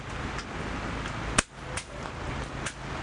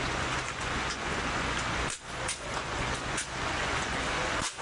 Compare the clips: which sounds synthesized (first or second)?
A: second